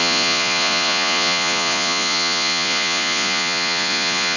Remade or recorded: remade